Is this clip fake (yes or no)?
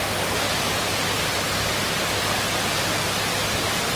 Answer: no